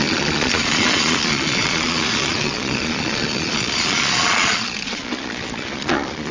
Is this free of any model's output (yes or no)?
no